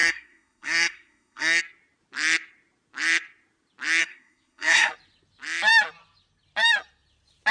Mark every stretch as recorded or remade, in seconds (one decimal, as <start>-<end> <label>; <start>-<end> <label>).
0.0-1.6 remade; 1.6-4.0 recorded; 4.0-4.9 remade; 4.9-7.5 recorded